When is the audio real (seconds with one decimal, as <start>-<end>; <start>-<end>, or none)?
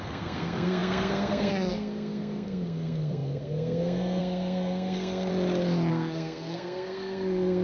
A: 5.3-5.9